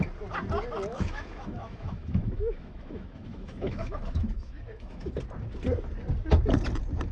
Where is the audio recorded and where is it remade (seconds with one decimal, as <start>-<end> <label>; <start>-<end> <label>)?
0.0-0.9 recorded; 0.9-5.1 remade; 5.1-7.1 recorded